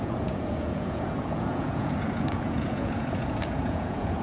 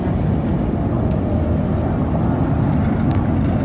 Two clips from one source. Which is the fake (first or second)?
first